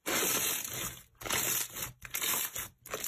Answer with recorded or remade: recorded